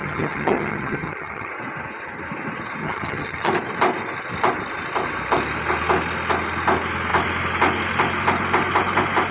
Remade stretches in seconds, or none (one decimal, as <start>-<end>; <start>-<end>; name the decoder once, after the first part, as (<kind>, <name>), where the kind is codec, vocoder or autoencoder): 0.0-1.5 (vocoder, HiFi-GAN); 2.8-3.5